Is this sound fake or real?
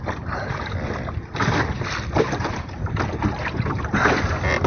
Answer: real